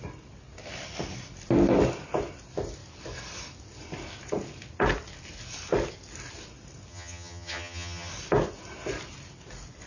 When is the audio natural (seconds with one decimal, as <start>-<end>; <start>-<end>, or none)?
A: 0.0-6.9; 8.1-9.9